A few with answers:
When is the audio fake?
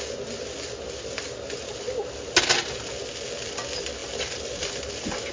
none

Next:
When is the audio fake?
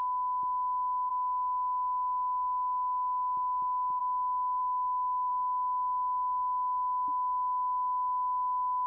none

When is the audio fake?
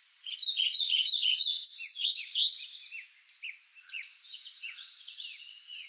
0.0-2.4 (vocoder, Vocos); 3.8-5.9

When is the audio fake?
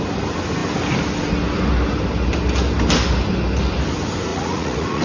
4.3-5.0 (vocoder, Vocos)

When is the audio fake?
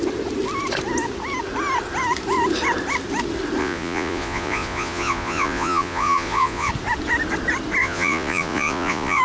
3.6-6.7 (vocoder, Vocos); 7.8-9.2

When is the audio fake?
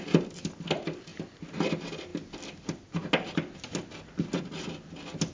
none